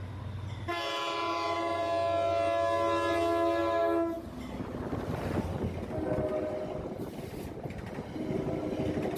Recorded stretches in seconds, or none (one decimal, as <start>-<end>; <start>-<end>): 0.0-9.2

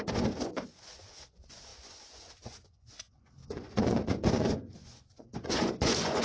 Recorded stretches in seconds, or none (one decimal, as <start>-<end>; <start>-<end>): none

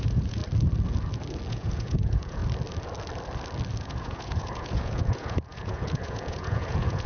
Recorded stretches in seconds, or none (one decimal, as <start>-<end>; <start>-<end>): 0.4-1.5; 2.4-3.8

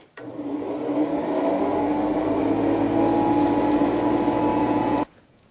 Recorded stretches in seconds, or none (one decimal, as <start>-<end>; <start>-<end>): 0.0-4.5

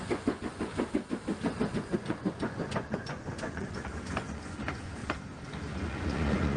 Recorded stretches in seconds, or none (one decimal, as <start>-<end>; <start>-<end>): 0.7-1.7; 5.0-5.6

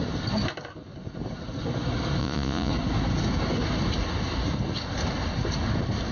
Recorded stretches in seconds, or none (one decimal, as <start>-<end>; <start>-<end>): 0.0-2.2; 2.7-6.1

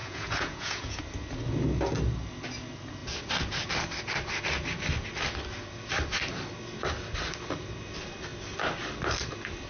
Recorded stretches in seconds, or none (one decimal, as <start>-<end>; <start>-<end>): 1.0-9.7